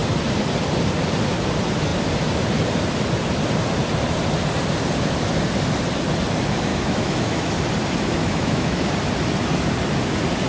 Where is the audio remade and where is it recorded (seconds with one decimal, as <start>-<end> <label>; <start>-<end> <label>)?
0.0-6.7 recorded; 6.7-7.5 remade; 7.5-8.2 recorded; 8.2-8.9 remade; 8.9-10.5 recorded